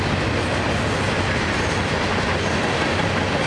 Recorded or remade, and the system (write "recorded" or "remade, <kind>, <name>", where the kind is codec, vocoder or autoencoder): recorded